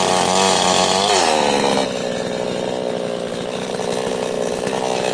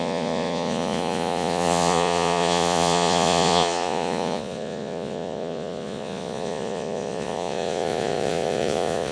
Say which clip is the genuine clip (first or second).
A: first